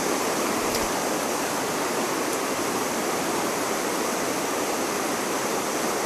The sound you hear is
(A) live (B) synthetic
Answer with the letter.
A